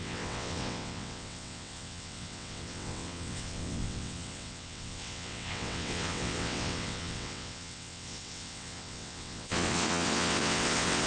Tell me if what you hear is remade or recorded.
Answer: remade